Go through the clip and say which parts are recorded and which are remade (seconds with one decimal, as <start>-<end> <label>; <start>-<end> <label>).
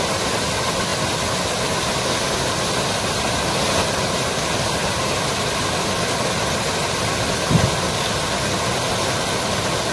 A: 0.0-4.8 recorded; 4.8-5.3 remade; 5.3-9.9 recorded